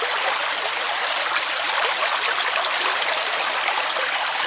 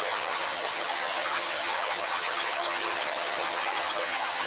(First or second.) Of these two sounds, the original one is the first